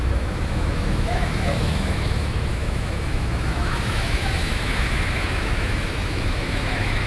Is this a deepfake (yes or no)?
yes